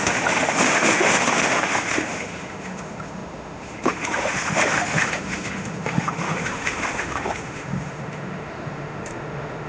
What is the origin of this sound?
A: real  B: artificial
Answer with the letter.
B